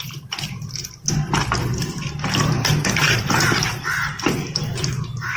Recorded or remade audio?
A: recorded